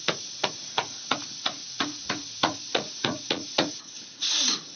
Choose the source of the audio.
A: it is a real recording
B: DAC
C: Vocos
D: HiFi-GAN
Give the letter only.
C